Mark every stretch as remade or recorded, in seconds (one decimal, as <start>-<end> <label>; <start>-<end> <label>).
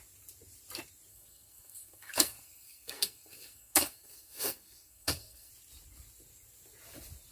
0.0-1.1 recorded; 1.1-5.5 remade; 5.5-7.3 recorded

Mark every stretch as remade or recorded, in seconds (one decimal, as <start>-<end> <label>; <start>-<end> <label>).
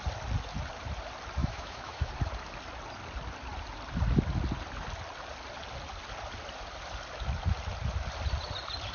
0.0-1.4 recorded; 1.4-2.1 remade; 2.1-8.9 recorded